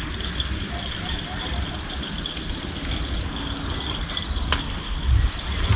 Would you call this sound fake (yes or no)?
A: no